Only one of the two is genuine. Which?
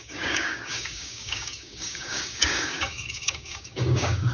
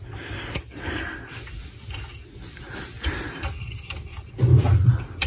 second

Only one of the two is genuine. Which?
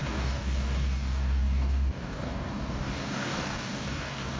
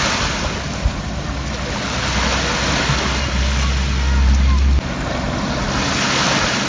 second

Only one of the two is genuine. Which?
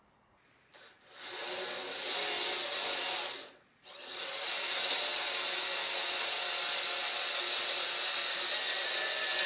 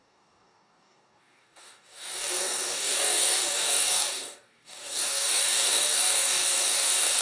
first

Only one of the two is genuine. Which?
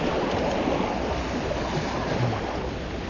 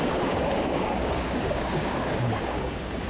first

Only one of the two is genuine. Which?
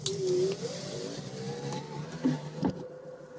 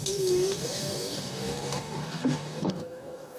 first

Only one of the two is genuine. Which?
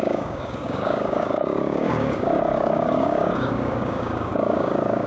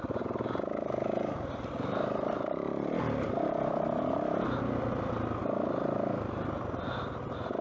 second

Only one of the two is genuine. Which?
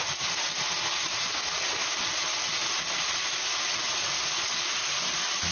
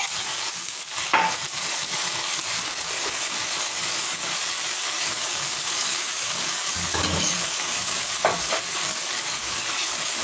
first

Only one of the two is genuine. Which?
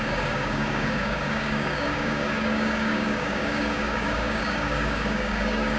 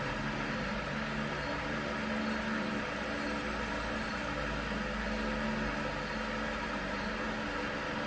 second